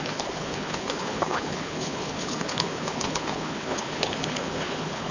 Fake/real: fake